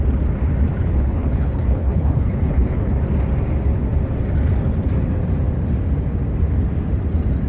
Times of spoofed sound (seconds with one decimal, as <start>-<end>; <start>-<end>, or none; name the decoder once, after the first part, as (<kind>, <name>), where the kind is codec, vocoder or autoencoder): 0.8-2.9 (codec, HILCodec)